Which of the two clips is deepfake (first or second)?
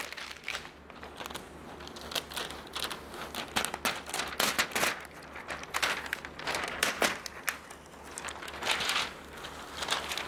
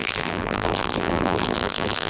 second